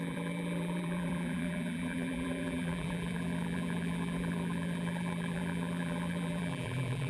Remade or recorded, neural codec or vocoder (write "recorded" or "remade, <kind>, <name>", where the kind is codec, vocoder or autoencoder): remade, vocoder, BigVGAN v2